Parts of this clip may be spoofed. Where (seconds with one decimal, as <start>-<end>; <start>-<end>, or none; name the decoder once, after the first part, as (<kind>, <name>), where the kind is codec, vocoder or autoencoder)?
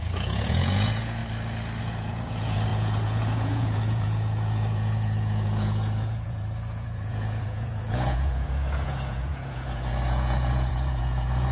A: 0.0-1.2 (vocoder, Vocos); 1.8-11.5